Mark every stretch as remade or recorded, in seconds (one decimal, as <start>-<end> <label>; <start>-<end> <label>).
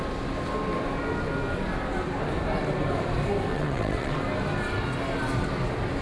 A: 0.0-3.5 recorded; 3.5-4.2 remade; 4.2-6.0 recorded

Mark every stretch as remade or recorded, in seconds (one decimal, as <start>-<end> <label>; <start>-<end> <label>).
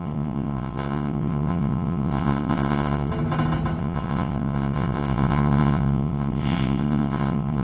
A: 0.0-3.1 remade; 3.1-3.8 recorded; 3.8-7.6 remade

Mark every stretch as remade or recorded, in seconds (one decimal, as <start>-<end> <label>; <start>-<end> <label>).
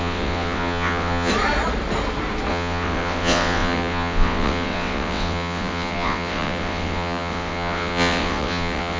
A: 0.0-1.3 remade; 1.3-2.5 recorded; 2.5-9.0 remade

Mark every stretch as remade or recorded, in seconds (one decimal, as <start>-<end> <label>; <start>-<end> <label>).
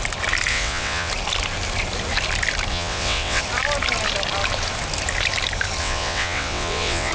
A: 0.0-0.5 recorded; 0.5-1.1 remade; 1.1-2.7 recorded; 2.7-3.4 remade; 3.4-5.8 recorded; 5.8-7.1 remade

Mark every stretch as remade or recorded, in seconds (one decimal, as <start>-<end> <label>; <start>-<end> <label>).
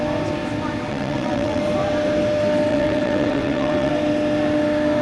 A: 0.0-0.9 recorded; 0.9-1.6 remade; 1.6-2.7 recorded; 2.7-3.9 remade; 3.9-5.0 recorded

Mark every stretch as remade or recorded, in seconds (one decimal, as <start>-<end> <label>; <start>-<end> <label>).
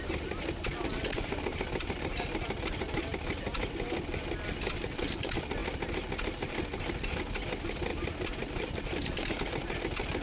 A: 0.0-10.2 recorded